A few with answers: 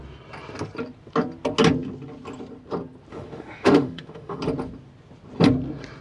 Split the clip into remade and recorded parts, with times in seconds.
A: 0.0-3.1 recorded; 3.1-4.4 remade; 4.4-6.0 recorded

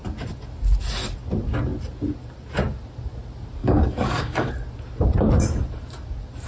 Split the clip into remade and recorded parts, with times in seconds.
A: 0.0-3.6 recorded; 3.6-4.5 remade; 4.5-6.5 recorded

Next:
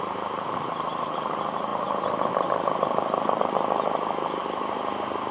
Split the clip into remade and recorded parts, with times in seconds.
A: 0.0-4.4 remade; 4.4-5.3 recorded

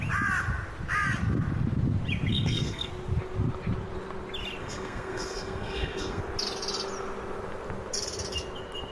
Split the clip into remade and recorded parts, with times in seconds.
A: 0.0-2.3 recorded; 2.3-2.9 remade; 2.9-4.6 recorded; 4.6-6.2 remade; 6.2-8.9 recorded

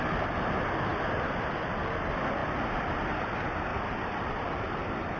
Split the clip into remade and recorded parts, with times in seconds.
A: 0.0-2.4 recorded; 2.4-3.2 remade; 3.2-3.7 recorded; 3.7-5.2 remade